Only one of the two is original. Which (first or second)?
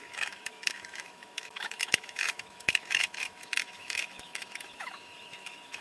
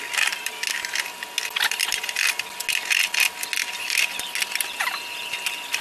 second